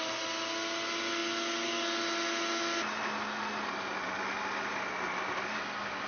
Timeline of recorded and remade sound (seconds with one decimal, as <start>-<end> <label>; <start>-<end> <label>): 0.0-6.1 recorded